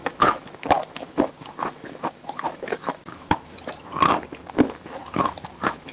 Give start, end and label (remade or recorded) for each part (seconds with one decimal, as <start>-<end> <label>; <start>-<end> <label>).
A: 0.0-3.9 remade; 3.9-4.5 recorded; 4.5-5.9 remade